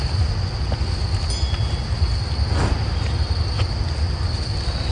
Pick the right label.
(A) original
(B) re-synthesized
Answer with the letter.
A